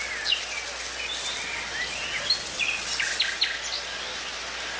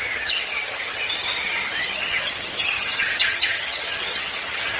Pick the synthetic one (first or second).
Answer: second